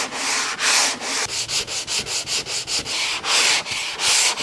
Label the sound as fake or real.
real